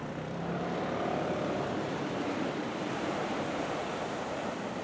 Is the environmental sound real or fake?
fake